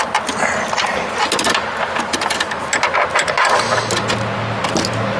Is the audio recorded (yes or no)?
yes